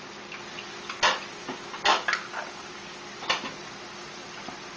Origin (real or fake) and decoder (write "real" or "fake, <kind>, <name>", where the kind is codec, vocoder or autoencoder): real